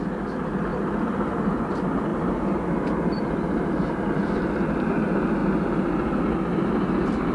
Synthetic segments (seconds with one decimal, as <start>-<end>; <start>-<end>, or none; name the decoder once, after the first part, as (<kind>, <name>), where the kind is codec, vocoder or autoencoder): 0.7-1.3 (vocoder, BigVGAN v2); 2.1-2.6